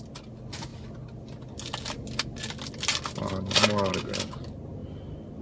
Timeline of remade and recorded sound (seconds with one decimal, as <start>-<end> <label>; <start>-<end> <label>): 0.0-5.4 recorded